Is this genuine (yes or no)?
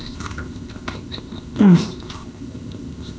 no